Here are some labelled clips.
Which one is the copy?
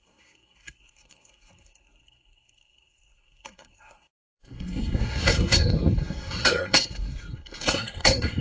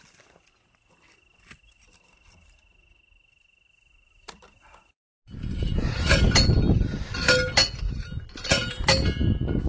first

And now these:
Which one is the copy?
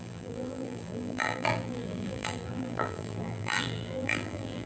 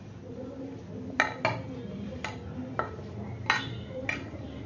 first